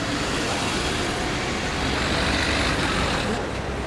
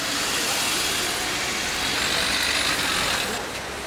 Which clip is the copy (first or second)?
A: first